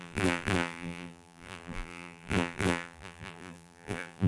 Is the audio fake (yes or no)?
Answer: yes